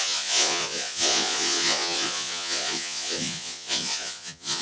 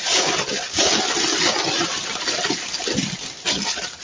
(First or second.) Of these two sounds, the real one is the second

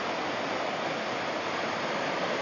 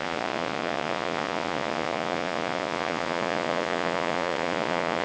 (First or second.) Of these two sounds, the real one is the first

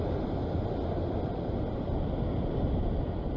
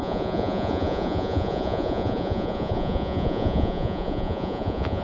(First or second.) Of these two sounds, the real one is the first